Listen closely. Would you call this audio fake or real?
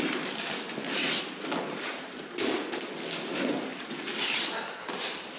real